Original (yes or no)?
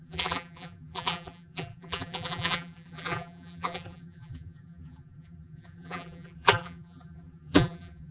no